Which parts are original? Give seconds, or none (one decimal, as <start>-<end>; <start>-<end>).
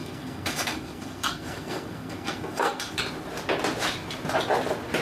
3.0-5.0